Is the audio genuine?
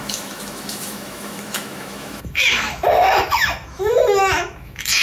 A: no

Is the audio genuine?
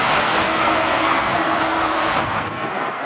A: no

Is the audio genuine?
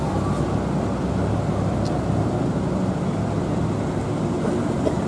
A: yes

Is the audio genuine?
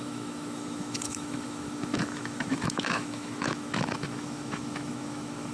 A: no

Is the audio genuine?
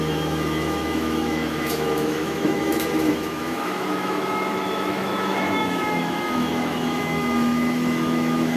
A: no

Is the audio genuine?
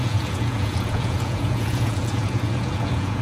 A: no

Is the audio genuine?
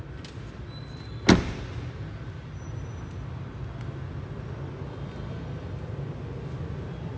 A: yes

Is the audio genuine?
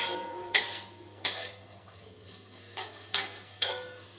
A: no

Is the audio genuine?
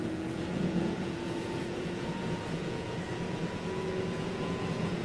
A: no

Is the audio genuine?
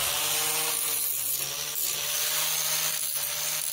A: yes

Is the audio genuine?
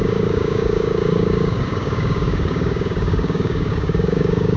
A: no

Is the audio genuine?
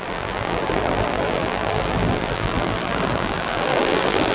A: no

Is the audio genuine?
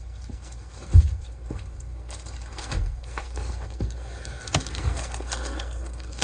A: no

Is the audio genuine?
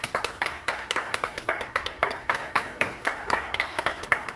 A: no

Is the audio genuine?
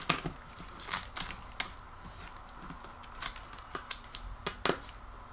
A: yes